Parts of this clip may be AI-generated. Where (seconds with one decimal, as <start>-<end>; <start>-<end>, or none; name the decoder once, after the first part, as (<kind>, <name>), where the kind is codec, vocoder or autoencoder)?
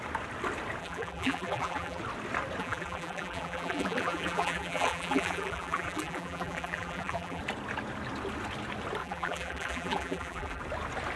0.8-2.0 (vocoder, BigVGAN v2); 2.6-7.4; 9.0-10.6